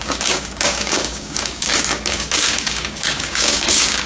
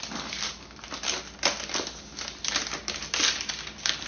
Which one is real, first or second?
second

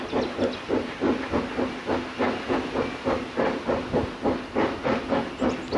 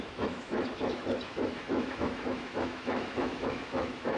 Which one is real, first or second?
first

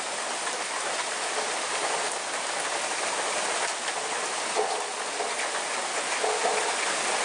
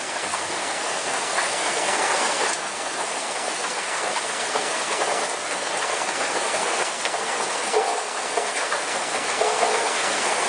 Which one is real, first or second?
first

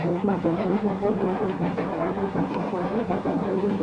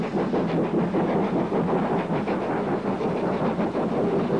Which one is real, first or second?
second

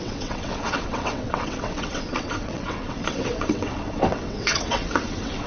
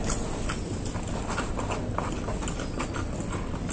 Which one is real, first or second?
second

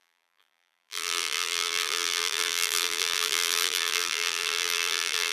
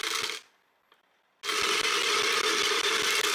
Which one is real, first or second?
second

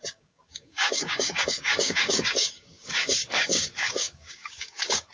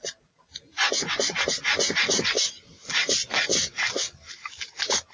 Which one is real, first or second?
second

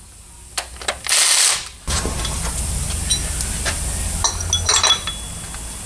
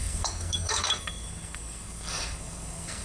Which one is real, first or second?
first